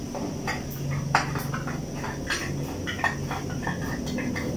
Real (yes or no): yes